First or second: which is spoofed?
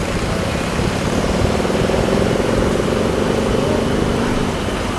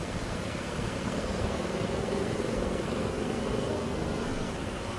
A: second